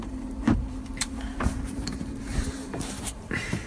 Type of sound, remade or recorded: remade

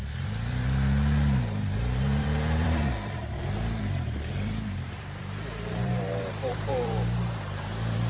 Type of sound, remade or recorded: remade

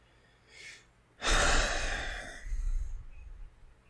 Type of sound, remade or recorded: recorded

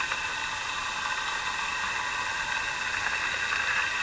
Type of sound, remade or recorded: recorded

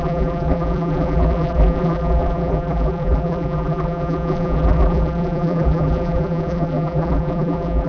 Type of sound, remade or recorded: remade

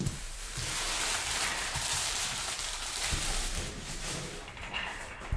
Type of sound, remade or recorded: remade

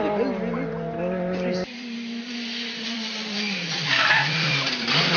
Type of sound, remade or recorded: remade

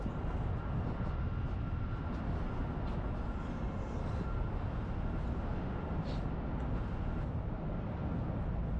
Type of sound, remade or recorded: recorded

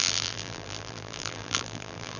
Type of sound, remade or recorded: remade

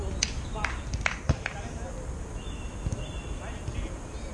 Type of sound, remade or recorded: recorded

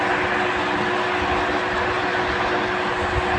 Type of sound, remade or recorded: recorded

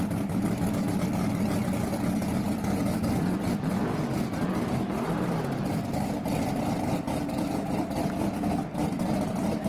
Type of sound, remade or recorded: recorded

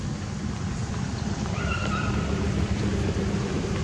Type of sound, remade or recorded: remade